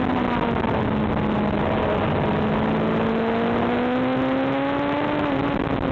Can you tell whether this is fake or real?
real